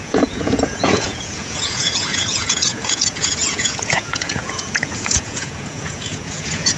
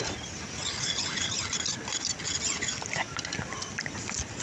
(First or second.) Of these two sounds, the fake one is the first